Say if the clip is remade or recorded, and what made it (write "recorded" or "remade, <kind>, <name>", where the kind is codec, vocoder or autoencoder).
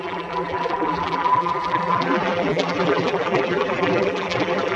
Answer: remade, vocoder, BigVGAN v2